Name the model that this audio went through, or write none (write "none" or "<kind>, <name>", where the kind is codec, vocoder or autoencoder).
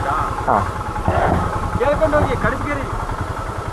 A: none